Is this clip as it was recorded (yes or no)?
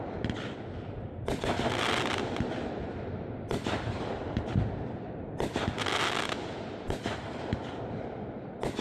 yes